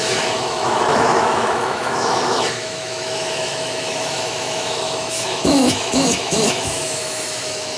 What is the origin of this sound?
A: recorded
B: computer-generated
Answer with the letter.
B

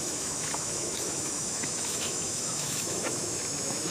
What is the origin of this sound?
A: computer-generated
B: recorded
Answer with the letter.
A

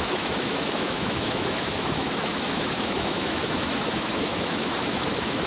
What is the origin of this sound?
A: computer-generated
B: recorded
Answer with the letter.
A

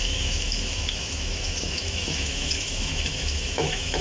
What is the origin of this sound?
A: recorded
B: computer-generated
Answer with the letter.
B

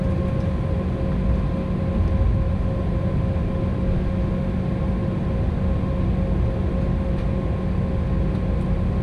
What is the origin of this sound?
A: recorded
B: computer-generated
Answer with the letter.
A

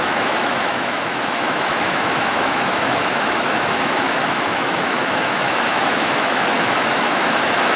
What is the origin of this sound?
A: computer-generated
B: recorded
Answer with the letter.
A